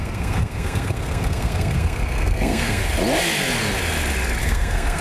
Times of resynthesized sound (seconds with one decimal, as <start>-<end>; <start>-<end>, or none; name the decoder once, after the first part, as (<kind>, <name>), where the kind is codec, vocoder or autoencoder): 0.0-2.8 (codec, SNAC); 4.4-5.0